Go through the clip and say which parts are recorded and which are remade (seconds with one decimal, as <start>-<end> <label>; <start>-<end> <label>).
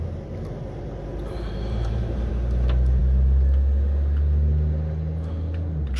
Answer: 0.0-1.2 recorded; 1.2-2.3 remade; 2.3-6.0 recorded